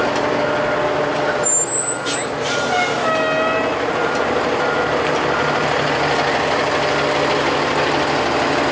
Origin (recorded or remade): recorded